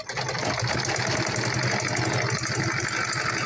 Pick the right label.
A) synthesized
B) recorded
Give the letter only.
B